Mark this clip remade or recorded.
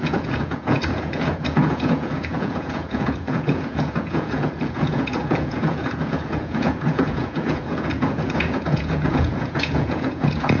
remade